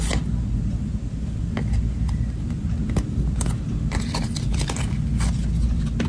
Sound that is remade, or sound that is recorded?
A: recorded